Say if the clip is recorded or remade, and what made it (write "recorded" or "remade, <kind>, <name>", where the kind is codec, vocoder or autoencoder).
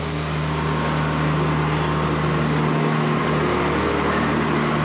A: recorded